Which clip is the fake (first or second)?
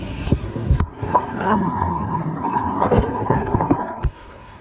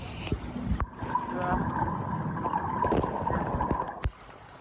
first